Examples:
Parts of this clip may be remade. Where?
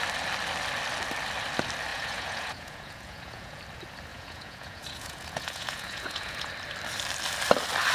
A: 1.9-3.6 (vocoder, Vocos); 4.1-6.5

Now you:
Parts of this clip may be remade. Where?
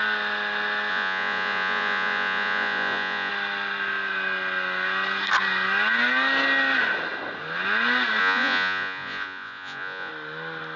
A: 0.9-3.3 (vocoder, Vocos); 8.2-10.1